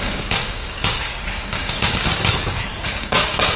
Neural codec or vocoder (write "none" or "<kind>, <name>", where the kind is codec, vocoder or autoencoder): codec, DAC